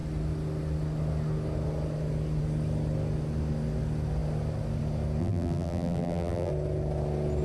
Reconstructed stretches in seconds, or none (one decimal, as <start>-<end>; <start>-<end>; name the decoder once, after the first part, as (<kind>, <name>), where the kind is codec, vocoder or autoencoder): 5.2-6.5 (vocoder, BigVGAN v2)